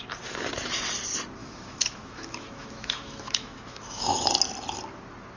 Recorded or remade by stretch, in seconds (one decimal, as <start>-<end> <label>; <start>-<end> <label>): 0.0-1.4 recorded; 1.4-4.3 remade; 4.3-5.4 recorded